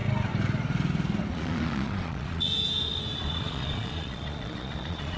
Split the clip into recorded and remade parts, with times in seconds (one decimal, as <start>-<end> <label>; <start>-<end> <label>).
0.0-1.3 recorded; 1.3-2.5 remade; 2.5-3.2 recorded; 3.2-5.2 remade